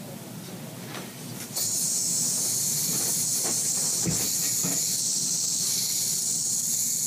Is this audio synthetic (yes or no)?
no